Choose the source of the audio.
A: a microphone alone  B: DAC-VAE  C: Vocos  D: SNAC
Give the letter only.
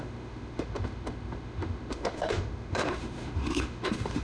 B